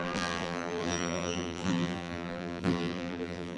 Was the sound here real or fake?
fake